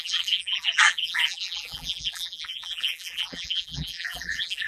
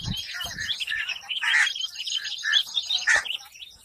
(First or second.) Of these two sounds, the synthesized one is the first